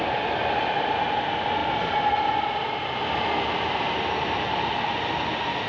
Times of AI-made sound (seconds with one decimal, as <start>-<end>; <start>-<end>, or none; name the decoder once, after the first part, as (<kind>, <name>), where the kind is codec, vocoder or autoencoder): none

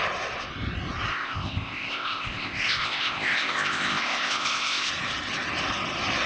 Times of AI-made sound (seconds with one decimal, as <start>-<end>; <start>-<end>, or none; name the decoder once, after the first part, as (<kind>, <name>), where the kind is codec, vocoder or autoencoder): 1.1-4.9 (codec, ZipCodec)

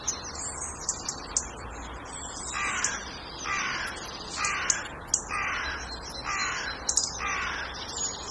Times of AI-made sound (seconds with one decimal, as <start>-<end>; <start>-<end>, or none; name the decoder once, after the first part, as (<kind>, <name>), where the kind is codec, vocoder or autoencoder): none

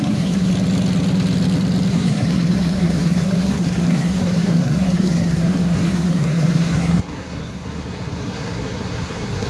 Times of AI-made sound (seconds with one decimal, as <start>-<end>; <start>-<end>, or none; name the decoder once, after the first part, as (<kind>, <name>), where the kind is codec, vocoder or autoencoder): 0.0-0.5 (codec, SNAC); 1.9-9.5

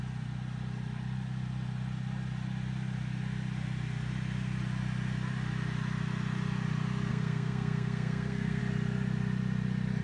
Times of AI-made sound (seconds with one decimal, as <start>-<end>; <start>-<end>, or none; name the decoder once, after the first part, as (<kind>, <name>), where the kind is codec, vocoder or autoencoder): 7.1-8.6 (codec, SNAC)

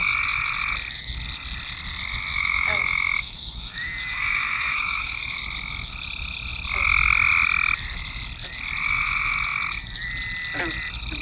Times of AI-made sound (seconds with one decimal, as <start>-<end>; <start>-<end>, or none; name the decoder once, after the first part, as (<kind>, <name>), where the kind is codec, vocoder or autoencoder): 2.3-5.4 (autoencoder, DAC-VAE)

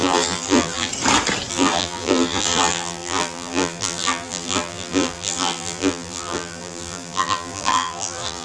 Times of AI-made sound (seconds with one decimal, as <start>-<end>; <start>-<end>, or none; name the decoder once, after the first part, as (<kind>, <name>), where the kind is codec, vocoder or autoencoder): 0.0-0.9 (vocoder, BigVGAN v2); 1.5-8.4